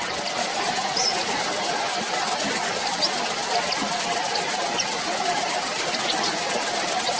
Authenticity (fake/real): real